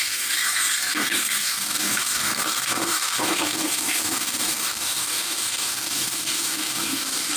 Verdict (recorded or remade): remade